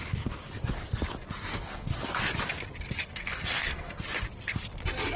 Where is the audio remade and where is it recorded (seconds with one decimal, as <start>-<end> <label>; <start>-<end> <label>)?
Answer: 0.0-1.5 recorded; 1.5-2.2 remade; 2.2-3.0 recorded; 3.0-4.0 remade; 4.0-5.2 recorded